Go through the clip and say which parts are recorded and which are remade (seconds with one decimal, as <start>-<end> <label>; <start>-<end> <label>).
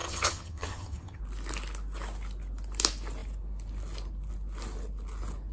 0.0-1.2 remade; 1.2-5.5 recorded